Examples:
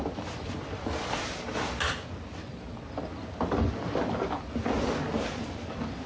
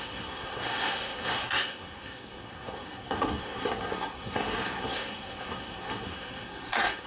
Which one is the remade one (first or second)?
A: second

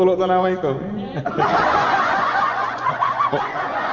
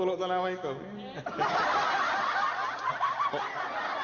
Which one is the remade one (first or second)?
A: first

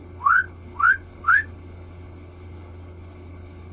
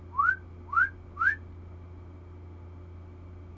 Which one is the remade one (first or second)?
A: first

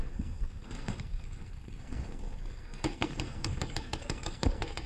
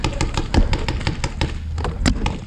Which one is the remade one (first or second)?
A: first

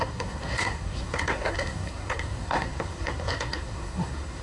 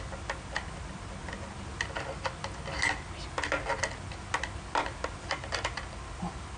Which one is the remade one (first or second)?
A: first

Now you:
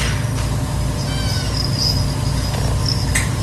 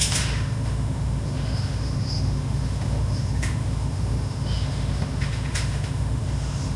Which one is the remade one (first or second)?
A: second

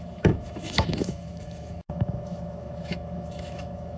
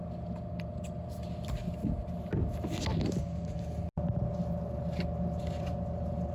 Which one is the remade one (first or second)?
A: first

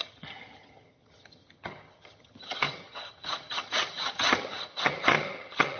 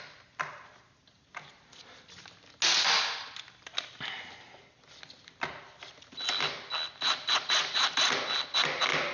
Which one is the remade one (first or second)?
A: first